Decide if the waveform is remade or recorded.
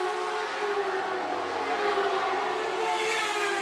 recorded